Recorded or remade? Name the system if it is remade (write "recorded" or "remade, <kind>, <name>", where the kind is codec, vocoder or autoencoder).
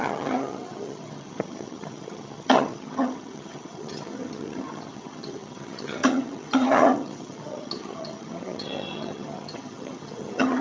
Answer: remade, vocoder, HiFi-GAN